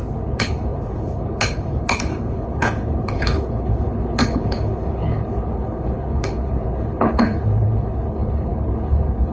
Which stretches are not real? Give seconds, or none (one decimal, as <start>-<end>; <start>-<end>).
0.0-9.3